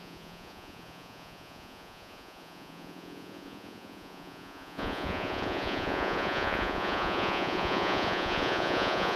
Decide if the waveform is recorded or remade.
remade